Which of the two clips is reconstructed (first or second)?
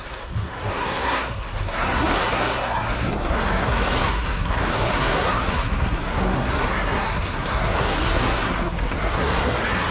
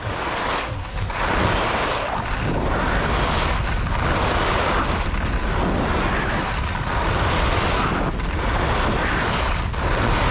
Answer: first